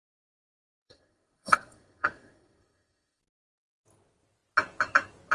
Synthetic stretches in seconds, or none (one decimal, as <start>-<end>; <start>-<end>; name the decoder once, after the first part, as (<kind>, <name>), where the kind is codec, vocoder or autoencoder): 0.5-3.2 (codec, SNAC)